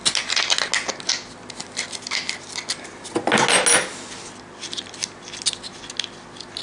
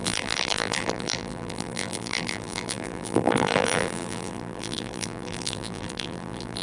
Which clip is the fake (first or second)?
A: second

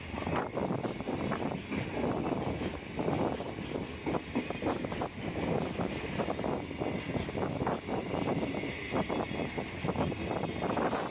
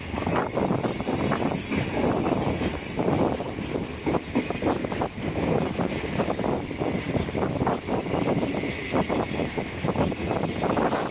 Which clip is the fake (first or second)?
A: second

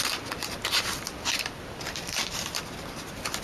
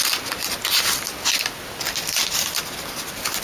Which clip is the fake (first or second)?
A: first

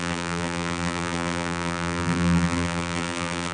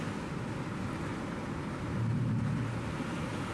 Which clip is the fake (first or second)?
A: first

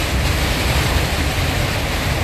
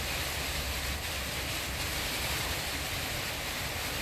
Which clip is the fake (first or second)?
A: second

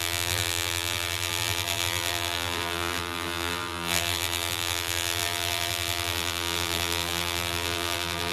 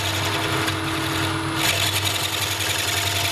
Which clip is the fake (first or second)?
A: first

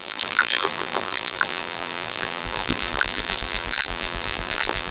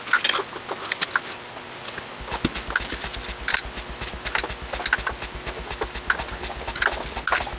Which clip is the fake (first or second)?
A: first